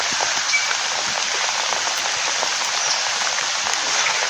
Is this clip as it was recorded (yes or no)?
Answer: yes